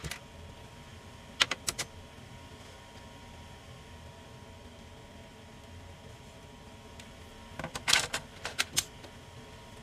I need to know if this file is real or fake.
real